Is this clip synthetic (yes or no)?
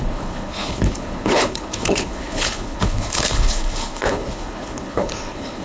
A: yes